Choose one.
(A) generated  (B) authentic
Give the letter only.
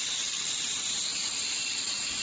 B